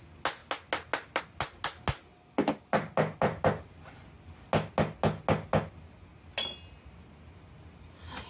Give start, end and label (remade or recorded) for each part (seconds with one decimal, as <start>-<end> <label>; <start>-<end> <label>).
0.0-8.3 recorded

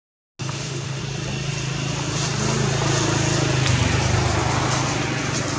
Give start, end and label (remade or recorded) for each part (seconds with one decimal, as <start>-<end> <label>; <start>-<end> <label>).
0.0-0.4 recorded; 0.4-1.0 remade; 1.0-5.6 recorded

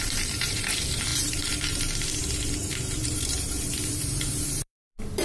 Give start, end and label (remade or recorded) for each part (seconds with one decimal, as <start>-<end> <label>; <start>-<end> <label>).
0.0-5.2 remade

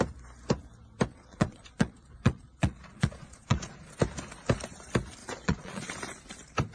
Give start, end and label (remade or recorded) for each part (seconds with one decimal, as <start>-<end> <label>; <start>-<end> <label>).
0.0-1.1 recorded; 1.1-3.9 remade; 3.9-5.2 recorded; 5.2-5.9 remade; 5.9-6.7 recorded

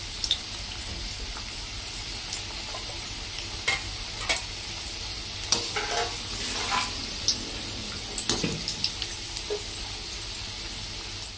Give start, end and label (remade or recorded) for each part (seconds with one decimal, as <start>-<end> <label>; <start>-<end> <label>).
0.0-11.4 recorded